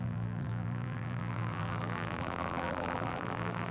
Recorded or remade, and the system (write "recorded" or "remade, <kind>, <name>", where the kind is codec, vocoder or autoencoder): remade, vocoder, BigVGAN v2